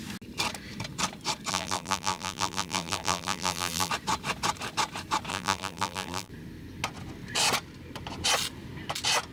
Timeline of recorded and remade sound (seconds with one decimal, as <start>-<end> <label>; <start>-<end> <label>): 0.0-1.5 recorded; 1.5-3.9 remade; 3.9-5.3 recorded; 5.3-6.3 remade; 6.3-9.3 recorded